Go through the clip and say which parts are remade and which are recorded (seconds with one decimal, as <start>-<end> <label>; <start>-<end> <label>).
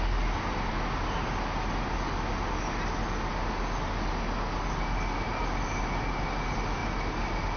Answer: 0.0-7.6 recorded